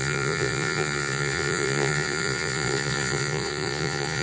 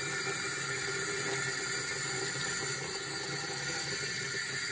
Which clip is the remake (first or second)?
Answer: first